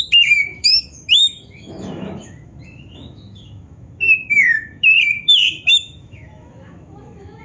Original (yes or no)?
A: no